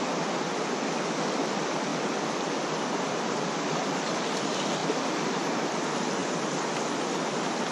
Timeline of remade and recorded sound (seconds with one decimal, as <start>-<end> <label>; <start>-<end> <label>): 0.0-7.7 remade